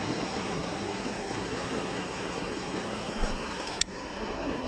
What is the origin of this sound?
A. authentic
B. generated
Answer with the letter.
B